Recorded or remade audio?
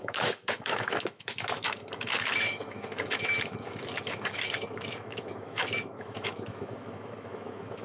remade